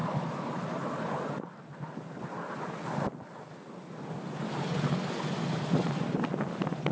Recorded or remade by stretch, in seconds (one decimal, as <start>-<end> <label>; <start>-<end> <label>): 0.0-6.9 recorded